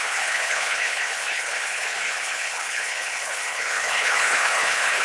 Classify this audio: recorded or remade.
remade